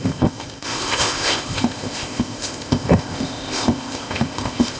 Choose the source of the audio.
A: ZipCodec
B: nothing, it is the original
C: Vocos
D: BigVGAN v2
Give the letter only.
A